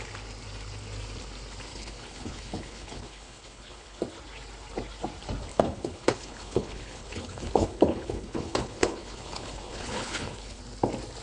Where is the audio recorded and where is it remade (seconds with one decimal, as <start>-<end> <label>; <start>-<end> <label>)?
0.0-1.7 recorded; 1.7-4.0 remade; 4.0-5.5 recorded; 5.5-10.6 remade; 10.6-11.2 recorded